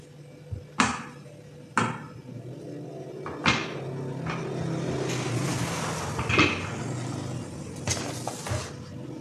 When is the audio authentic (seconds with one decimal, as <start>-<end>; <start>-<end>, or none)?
0.0-9.2